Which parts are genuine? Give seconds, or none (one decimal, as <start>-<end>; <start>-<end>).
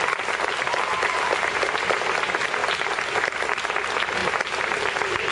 0.0-5.3